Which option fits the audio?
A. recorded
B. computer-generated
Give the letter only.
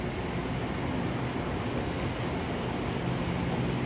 A